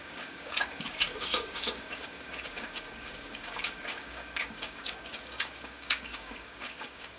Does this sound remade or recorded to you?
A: remade